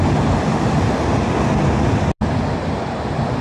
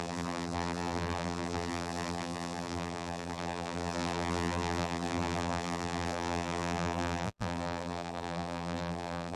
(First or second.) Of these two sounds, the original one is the first